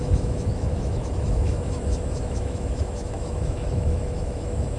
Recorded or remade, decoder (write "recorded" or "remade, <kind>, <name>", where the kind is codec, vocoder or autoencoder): remade, autoencoder, DAC-VAE